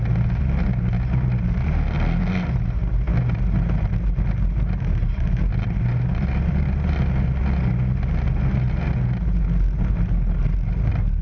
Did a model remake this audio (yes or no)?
no